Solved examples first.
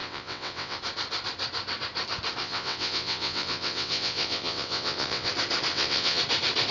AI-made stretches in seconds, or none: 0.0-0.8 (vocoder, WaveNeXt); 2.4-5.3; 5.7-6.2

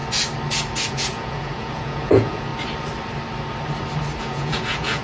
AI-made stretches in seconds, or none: 0.9-2.5 (vocoder, Vocos); 4.2-5.0

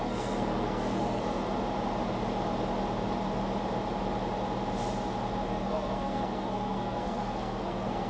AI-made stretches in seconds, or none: 0.0-1.3 (codec, SNAC); 5.5-8.1

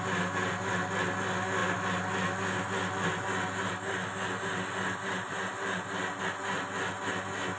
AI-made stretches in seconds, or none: none

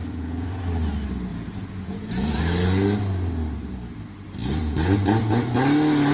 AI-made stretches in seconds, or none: 0.0-0.6 (vocoder, Vocos); 1.3-2.4